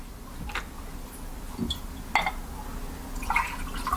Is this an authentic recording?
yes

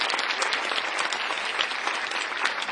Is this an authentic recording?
yes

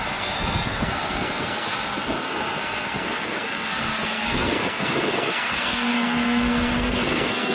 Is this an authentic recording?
no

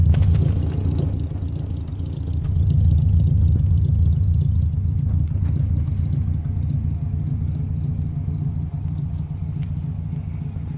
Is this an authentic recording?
yes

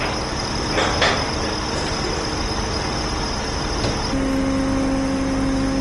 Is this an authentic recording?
yes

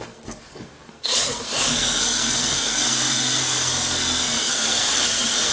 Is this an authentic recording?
no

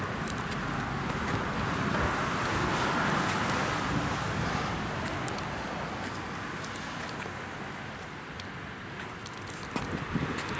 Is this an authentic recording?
yes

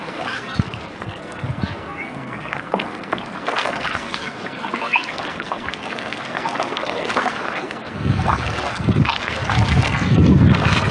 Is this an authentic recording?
no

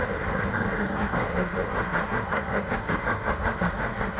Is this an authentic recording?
no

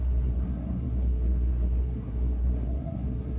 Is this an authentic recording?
no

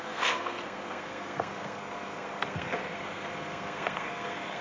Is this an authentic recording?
no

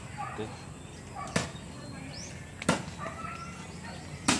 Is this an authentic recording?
yes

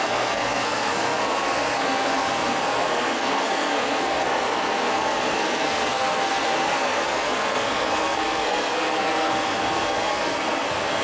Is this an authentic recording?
no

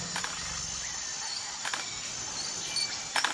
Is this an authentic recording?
yes